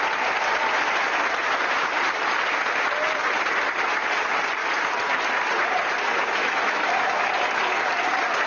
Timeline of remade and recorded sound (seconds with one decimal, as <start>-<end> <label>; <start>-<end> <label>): 0.0-6.4 recorded; 6.4-7.3 remade; 7.3-8.5 recorded